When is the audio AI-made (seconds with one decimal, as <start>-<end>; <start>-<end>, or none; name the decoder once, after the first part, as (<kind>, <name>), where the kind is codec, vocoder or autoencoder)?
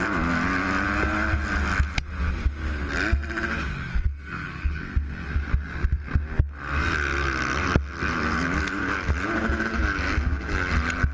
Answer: 3.9-4.8 (codec, SNAC)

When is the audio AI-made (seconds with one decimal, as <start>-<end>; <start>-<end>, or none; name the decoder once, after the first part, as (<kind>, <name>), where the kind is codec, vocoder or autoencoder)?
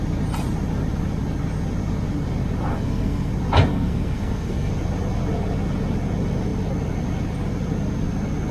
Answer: 2.7-3.3 (codec, SNAC); 3.7-4.7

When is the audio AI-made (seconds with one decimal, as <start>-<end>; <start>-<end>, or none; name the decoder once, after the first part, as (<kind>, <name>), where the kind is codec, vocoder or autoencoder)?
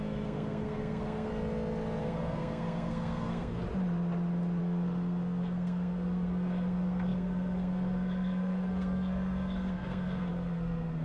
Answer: 0.0-1.3 (codec, SNAC); 2.0-3.6; 4.6-11.0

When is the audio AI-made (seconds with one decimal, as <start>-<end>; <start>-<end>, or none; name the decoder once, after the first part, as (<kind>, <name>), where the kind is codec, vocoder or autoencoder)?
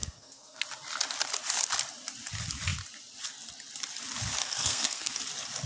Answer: 0.0-0.6 (codec, SNAC); 4.4-5.2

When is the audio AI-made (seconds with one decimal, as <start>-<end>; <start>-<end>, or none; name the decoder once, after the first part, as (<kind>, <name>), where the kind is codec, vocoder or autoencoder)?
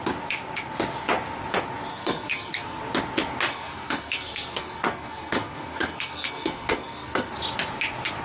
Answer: 1.9-2.8 (codec, SNAC); 3.5-7.3